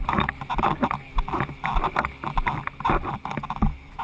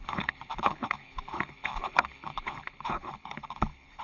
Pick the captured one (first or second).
first